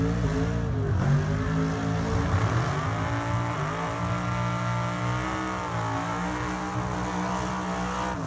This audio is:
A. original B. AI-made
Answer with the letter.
A